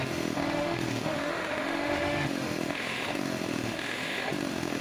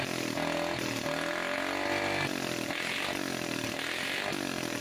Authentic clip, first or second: second